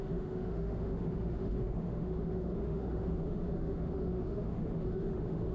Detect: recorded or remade remade